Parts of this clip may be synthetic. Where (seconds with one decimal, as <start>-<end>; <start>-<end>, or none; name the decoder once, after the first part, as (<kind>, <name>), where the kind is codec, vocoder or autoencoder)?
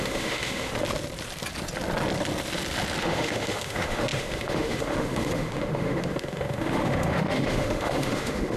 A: 0.0-0.7 (autoencoder, DAC-VAE); 3.0-8.6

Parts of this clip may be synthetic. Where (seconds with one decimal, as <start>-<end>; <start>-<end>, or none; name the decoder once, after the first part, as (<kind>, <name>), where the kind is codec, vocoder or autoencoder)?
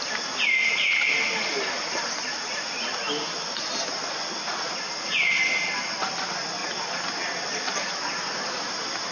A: none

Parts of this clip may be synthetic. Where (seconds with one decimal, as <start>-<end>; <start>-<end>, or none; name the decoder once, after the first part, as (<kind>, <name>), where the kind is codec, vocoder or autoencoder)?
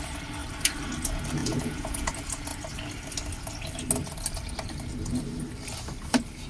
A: 1.4-2.1 (vocoder, Vocos)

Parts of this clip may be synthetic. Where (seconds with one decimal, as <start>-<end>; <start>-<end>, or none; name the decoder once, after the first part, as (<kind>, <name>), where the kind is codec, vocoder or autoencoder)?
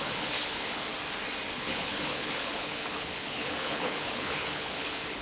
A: 0.0-0.9 (codec, HILCodec); 1.5-5.2